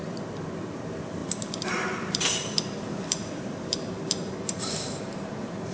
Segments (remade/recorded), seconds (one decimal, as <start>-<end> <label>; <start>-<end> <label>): 0.0-5.7 remade